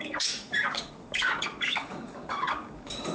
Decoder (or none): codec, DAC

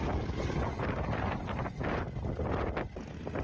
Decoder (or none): none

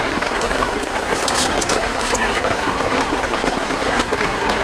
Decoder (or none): codec, SNAC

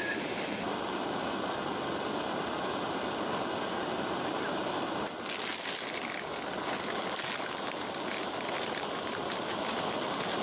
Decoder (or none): none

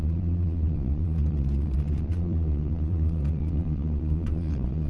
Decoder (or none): vocoder, Vocos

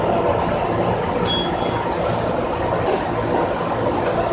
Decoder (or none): none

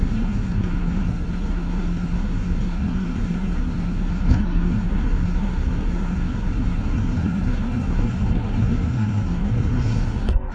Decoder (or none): codec, SNAC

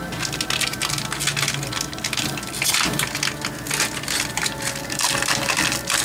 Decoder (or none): none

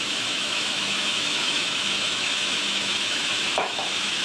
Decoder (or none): autoencoder, DAC-VAE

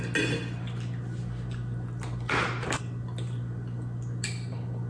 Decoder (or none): none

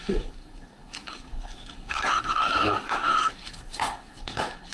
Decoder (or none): codec, SNAC